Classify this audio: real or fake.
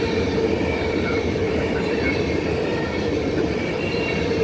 fake